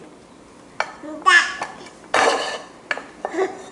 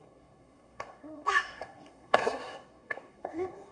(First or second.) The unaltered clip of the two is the first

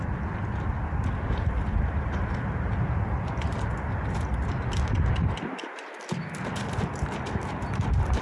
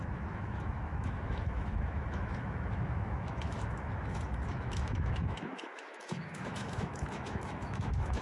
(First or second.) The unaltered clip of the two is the first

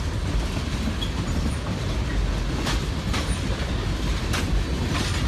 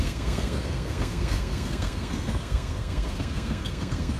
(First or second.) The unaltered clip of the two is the first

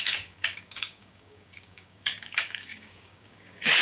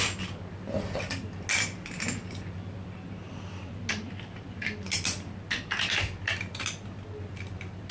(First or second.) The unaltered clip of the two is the second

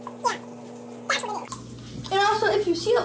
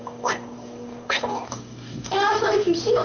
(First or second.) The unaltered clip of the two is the first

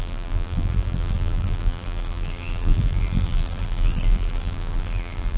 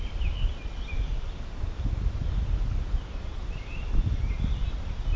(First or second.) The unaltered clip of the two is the second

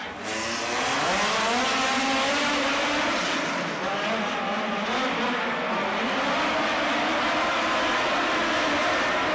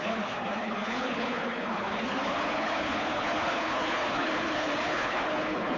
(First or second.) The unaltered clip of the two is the first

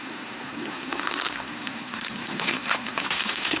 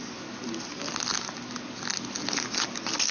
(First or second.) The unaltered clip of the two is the second